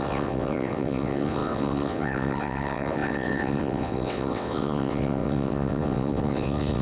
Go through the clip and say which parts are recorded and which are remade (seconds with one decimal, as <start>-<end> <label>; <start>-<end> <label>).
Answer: 0.0-6.8 remade